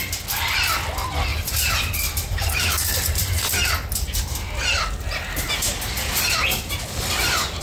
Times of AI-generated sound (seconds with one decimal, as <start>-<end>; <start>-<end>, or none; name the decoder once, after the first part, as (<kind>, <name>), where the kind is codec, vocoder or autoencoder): 1.3-3.5 (vocoder, BigVGAN v2)